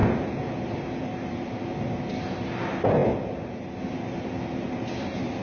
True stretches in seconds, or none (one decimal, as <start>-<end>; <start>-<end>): 0.0-5.4